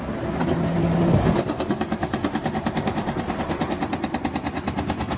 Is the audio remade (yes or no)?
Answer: no